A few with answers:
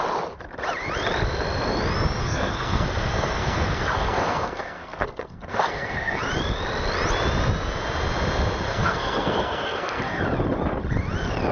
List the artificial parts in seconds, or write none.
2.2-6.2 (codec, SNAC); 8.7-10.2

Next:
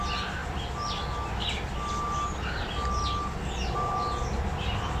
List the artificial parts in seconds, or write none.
none

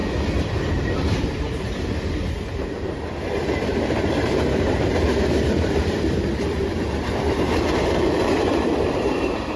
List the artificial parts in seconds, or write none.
0.7-9.6 (vocoder, BigVGAN v2)

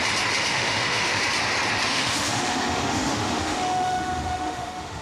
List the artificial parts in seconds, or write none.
0.5-1.2 (autoencoder, DAC-VAE); 1.9-5.0

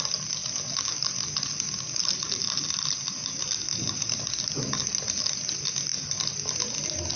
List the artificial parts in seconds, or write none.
none